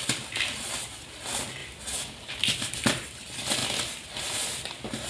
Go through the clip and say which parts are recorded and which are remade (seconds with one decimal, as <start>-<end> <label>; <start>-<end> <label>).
0.0-5.1 recorded